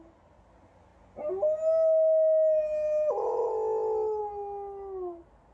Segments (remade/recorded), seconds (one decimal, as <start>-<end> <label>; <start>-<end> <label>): 0.0-5.5 recorded